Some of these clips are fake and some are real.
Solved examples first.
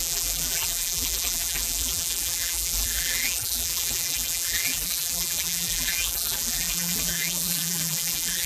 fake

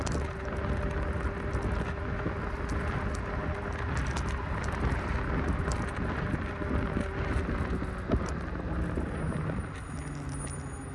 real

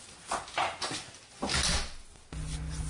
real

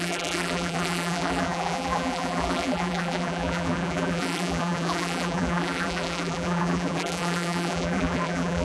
fake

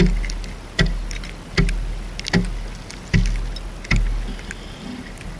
real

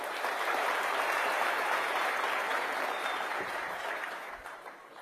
fake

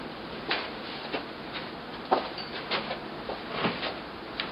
real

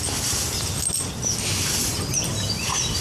real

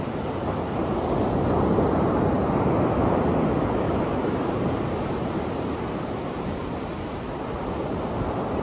fake